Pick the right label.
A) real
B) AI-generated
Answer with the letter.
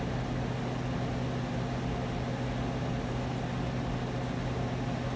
A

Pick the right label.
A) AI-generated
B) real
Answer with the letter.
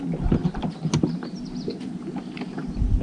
B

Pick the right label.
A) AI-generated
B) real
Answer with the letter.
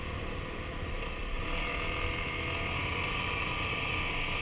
B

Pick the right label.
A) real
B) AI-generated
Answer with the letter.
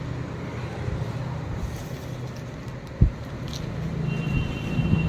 A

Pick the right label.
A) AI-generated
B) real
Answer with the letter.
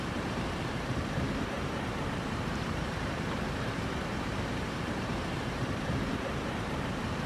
A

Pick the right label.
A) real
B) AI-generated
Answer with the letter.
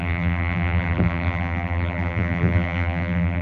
B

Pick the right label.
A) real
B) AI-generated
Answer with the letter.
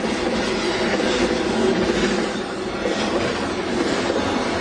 A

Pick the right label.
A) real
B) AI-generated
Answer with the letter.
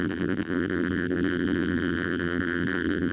B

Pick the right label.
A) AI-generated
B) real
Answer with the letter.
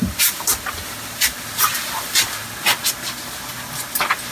B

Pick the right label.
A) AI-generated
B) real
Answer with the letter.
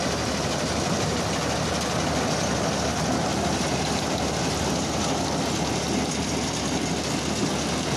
B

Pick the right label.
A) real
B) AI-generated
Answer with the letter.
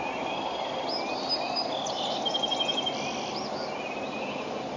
A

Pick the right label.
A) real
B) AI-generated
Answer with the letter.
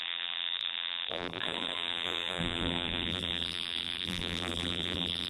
B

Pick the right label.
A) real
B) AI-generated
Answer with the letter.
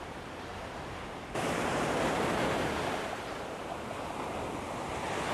A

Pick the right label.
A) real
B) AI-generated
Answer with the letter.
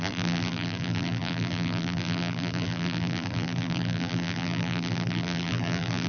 B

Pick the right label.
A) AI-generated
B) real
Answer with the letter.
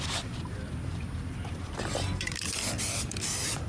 A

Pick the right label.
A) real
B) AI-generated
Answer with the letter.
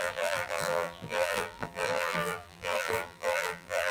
B